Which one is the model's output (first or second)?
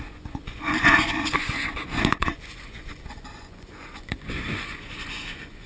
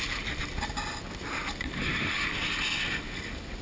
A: first